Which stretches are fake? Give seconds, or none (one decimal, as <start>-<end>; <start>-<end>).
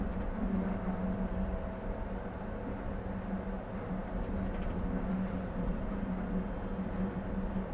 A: none